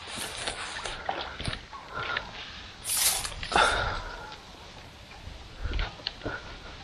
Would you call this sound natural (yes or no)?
yes